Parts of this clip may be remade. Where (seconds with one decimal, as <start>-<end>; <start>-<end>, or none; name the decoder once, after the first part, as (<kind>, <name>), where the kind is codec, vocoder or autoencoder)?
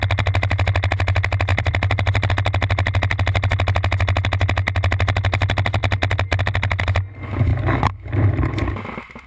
1.5-2.3 (vocoder, BigVGAN v2); 7.5-8.3